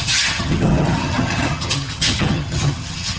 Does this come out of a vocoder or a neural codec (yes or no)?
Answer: yes